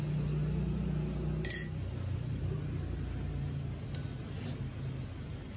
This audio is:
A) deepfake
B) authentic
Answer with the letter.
B